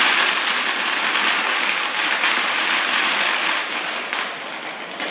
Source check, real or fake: real